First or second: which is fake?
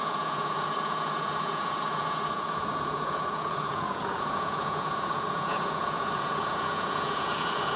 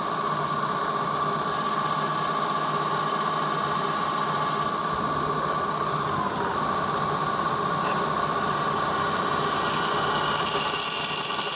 first